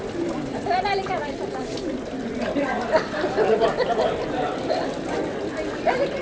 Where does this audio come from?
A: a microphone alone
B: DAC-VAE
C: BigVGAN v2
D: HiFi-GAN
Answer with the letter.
C